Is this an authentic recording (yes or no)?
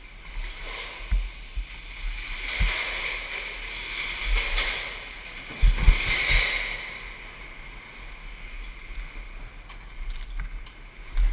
yes